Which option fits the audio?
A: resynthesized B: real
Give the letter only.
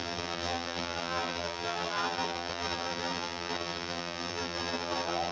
A